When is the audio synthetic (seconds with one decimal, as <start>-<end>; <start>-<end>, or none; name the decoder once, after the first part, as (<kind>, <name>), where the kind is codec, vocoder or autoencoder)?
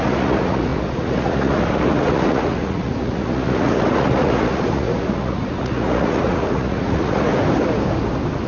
0.0-7.3 (vocoder, Vocos)